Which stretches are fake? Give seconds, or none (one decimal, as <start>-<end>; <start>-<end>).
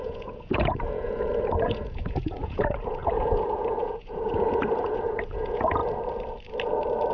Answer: 0.0-5.8